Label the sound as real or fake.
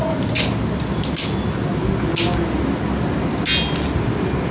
real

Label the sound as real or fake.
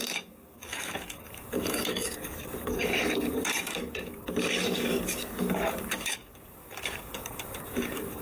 fake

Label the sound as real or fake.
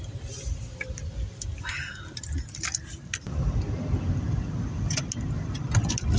real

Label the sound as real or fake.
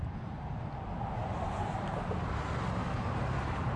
real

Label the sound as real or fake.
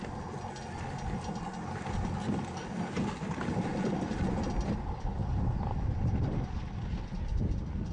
real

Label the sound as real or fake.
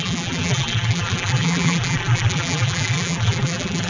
fake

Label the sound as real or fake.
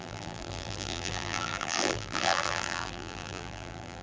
fake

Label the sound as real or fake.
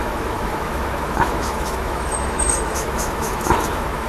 fake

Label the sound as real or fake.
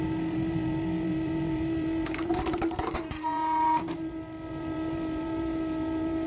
fake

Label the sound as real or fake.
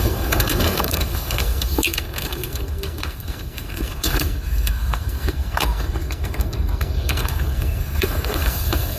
fake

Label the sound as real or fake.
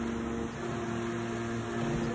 real